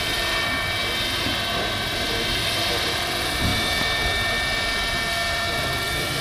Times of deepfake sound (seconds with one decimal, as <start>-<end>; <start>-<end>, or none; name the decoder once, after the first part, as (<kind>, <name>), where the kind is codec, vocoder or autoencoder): 0.0-0.8 (vocoder, BigVGAN v2); 1.7-3.5; 5.3-6.2